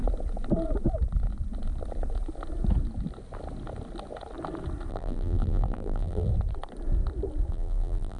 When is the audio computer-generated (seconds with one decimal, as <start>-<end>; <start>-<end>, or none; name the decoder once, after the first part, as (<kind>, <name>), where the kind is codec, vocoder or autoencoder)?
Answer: 4.9-6.3 (vocoder, BigVGAN v2); 7.5-8.2